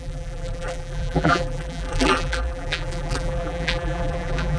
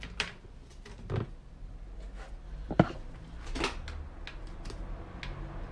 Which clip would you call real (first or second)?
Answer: second